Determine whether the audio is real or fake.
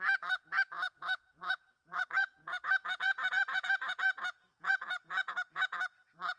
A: fake